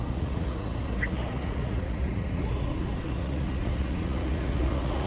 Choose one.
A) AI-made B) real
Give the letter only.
A